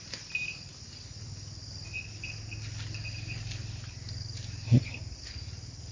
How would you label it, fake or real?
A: real